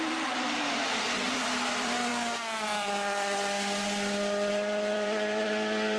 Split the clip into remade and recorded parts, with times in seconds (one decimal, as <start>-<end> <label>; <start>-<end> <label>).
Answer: 0.0-2.1 remade; 2.1-4.5 recorded; 4.5-6.0 remade